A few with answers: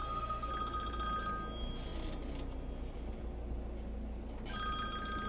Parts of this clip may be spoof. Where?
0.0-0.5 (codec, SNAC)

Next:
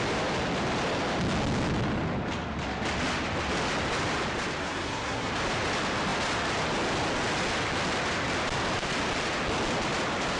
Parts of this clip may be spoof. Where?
4.6-5.3 (codec, SNAC)

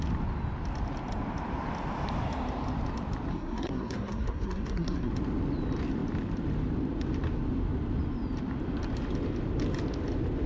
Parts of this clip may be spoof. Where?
3.3-5.1 (codec, SNAC)

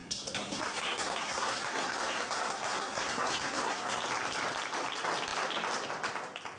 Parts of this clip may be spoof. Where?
0.0-4.0 (codec, SNAC)

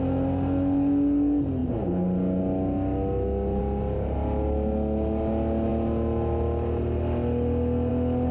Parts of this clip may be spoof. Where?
none

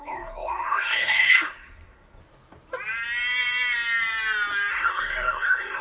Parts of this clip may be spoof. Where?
0.0-2.2 (codec, SNAC); 4.7-5.8

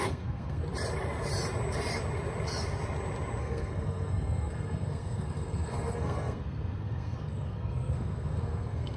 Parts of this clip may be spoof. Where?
0.0-0.6 (codec, SNAC); 3.4-9.0

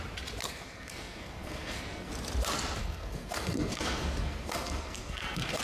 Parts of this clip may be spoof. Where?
0.4-2.1 (codec, SNAC); 2.8-5.6